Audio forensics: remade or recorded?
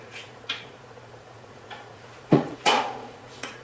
remade